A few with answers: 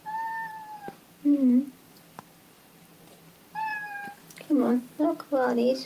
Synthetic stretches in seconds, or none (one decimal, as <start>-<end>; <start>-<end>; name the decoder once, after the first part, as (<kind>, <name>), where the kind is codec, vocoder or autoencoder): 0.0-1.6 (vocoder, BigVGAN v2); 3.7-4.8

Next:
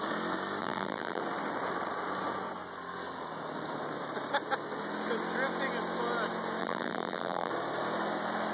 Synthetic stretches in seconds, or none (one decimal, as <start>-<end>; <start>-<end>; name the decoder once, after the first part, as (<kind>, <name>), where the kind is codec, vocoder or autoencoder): 0.6-1.2 (vocoder, BigVGAN v2); 6.6-7.5

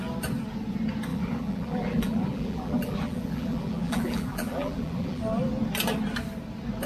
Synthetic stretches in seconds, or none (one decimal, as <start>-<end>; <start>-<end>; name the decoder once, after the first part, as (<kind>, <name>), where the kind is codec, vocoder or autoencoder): 1.1-5.2 (vocoder, BigVGAN v2)

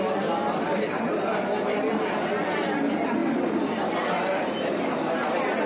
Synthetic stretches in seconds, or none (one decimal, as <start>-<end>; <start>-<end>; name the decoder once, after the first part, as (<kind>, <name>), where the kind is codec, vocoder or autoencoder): 3.2-4.5 (vocoder, BigVGAN v2)